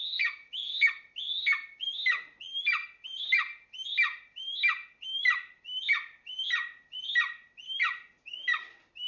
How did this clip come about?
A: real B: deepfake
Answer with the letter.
A